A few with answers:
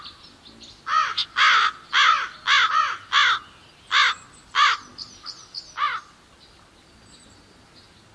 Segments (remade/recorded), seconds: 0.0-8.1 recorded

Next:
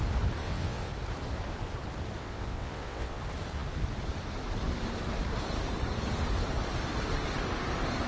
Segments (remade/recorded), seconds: 0.0-0.4 recorded; 0.4-0.9 remade; 0.9-2.2 recorded; 2.2-3.2 remade; 3.2-8.1 recorded

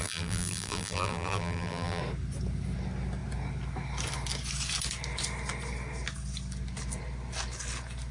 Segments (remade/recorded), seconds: 0.0-2.0 remade; 2.0-8.1 recorded